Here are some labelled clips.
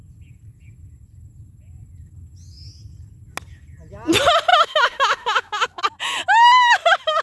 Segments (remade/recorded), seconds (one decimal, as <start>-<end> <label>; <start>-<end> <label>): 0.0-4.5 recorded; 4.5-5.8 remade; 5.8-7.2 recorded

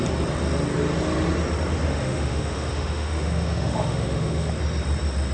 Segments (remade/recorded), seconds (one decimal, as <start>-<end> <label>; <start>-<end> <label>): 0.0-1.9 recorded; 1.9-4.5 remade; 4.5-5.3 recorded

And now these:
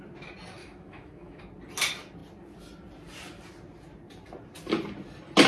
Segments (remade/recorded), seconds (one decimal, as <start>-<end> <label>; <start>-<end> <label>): 0.0-0.6 recorded; 0.6-1.4 remade; 1.4-5.5 recorded

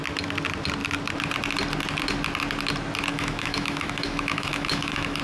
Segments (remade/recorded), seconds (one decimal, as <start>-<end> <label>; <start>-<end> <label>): 0.0-3.1 recorded; 3.1-5.2 remade